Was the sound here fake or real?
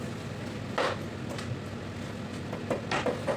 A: real